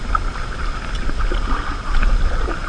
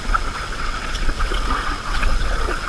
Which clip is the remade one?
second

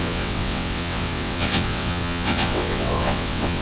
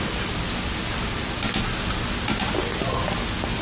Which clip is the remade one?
first